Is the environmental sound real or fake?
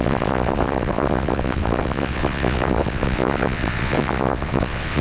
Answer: fake